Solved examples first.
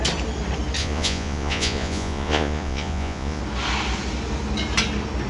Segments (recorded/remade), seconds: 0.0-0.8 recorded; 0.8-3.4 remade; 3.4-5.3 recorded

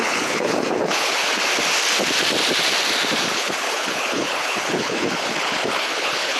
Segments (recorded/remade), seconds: 0.0-1.4 remade; 1.4-3.2 recorded; 3.2-6.4 remade